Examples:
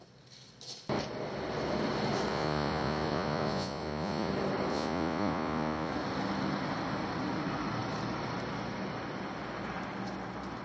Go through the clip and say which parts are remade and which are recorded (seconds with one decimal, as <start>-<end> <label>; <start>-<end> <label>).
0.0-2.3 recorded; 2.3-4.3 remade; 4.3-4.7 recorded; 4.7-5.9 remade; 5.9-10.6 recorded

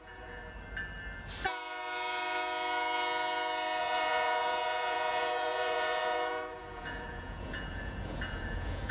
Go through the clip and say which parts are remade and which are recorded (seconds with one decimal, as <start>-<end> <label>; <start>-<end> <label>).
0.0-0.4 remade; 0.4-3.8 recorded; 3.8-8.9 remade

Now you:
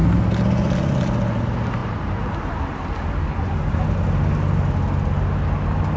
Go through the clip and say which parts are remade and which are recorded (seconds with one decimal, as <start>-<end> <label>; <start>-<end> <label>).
0.0-6.0 recorded

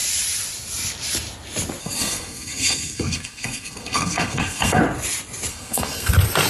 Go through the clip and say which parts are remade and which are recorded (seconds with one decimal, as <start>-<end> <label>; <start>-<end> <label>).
0.0-1.8 recorded; 1.8-4.8 remade; 4.8-5.5 recorded; 5.5-6.1 remade; 6.1-6.5 recorded